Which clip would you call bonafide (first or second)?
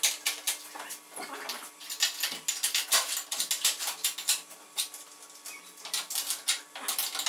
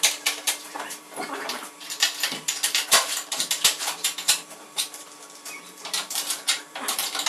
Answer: first